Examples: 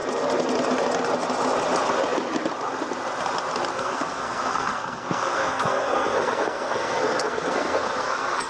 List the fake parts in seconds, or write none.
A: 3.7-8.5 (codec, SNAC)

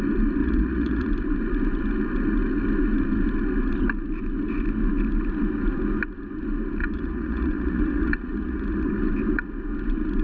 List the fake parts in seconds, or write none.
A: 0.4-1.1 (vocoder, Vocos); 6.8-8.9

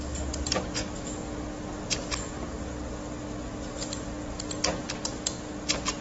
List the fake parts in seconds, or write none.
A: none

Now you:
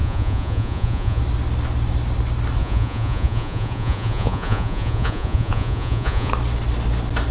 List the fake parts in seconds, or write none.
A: 0.0-1.2 (vocoder, Vocos); 2.6-6.3

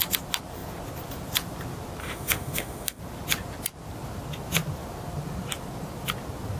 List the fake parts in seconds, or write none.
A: 2.0-3.0 (autoencoder, DAC-VAE)